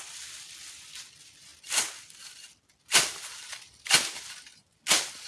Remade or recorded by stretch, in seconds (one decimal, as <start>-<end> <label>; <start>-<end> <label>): 0.0-5.3 recorded